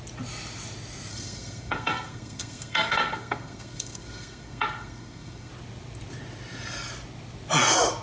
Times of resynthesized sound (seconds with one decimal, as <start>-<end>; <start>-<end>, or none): 1.1-5.5